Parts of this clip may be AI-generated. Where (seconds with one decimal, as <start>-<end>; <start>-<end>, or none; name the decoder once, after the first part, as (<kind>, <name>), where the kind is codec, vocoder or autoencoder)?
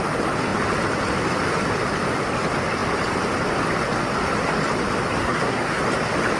5.2-5.8 (codec, SNAC)